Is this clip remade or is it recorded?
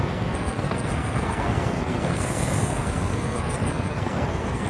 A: remade